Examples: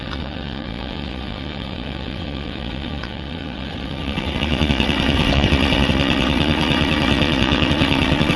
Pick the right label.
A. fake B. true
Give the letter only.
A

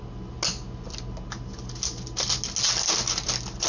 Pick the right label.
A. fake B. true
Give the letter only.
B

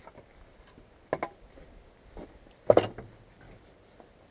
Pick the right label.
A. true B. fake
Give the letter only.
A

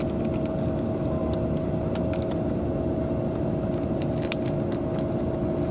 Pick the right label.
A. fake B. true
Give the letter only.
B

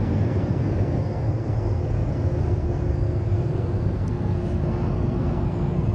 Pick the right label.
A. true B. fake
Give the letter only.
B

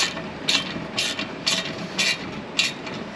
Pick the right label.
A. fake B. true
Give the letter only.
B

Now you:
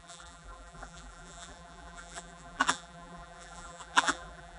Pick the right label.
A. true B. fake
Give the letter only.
B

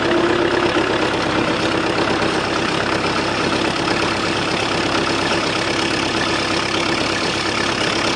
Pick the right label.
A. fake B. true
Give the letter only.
B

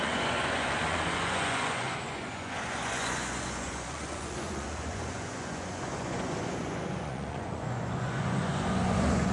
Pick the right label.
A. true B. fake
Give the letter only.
B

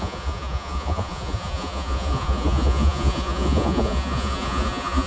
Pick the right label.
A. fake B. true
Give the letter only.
A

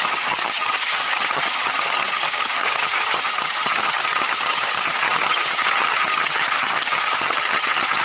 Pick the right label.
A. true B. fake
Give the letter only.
B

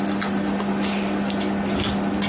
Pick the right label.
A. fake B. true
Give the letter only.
B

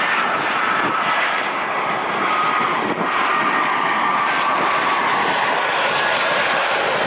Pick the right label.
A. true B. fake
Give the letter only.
A